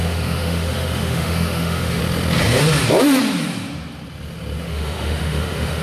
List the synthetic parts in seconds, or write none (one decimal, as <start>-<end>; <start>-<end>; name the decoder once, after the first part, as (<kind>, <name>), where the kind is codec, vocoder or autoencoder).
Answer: 0.0-2.0 (autoencoder, DAC-VAE); 4.6-5.8